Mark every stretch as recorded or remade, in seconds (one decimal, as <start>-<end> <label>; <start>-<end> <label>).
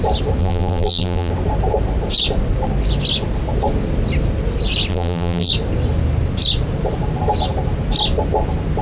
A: 0.0-0.4 recorded; 0.4-1.3 remade; 1.3-4.9 recorded; 4.9-5.5 remade; 5.5-8.8 recorded